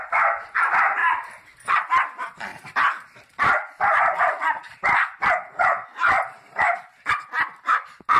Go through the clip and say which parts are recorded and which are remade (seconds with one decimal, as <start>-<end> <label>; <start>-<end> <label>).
0.0-1.0 recorded; 1.0-1.8 remade; 1.8-2.5 recorded; 2.5-4.0 remade; 4.0-5.9 recorded; 5.9-6.8 remade; 6.8-8.2 recorded